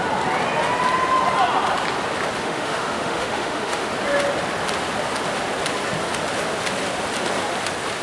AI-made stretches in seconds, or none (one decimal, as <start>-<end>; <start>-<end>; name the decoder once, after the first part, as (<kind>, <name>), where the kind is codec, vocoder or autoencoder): 2.4-3.9 (autoencoder, DAC-VAE)